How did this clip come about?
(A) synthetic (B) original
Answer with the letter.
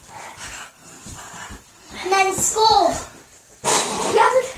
A